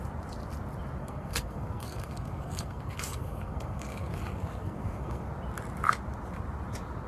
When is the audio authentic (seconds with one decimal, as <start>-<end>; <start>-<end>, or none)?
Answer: 0.0-1.0; 5.3-7.1